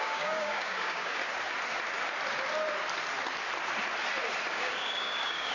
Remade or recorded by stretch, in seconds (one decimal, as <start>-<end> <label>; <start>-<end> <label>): 0.0-1.2 remade; 1.2-4.5 recorded; 4.5-5.5 remade